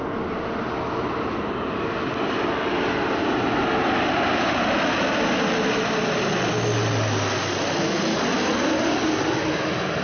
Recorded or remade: recorded